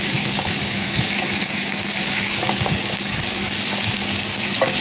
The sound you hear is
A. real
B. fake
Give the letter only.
B